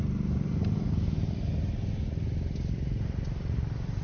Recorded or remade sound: recorded